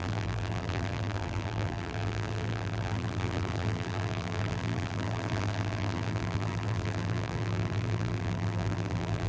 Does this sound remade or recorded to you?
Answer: remade